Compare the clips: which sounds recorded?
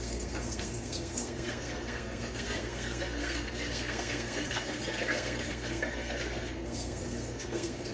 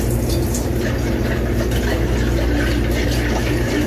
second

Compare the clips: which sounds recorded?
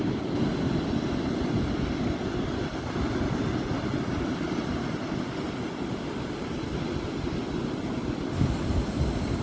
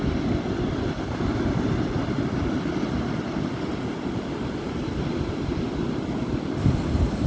first